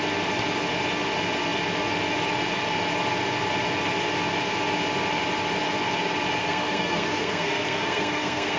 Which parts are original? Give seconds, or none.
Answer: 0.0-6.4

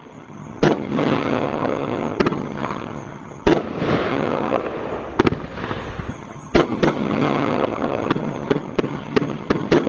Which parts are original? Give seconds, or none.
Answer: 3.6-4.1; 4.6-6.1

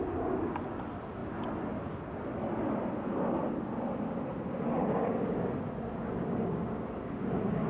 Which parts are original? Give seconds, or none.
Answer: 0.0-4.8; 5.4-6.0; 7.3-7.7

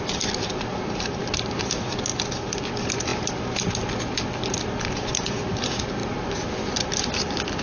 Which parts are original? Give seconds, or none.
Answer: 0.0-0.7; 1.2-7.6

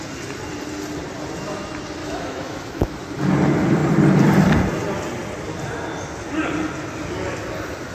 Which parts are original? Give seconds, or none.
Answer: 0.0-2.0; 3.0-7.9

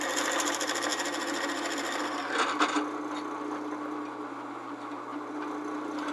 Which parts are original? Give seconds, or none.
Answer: 0.0-6.1

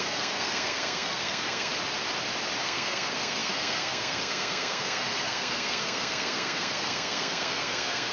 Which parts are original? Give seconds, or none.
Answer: 1.7-2.6